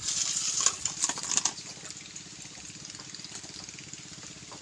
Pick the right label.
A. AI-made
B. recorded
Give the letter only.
B